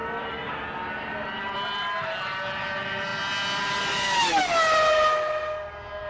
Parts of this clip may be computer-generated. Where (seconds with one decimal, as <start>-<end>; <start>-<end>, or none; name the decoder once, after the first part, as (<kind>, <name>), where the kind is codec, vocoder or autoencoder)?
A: none